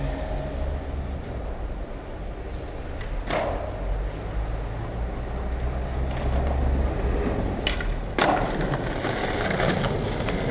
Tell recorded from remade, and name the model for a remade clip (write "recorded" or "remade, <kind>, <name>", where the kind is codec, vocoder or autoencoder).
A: recorded